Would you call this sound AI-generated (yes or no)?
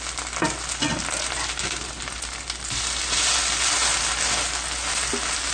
no